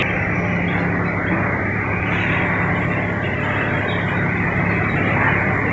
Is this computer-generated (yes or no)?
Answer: no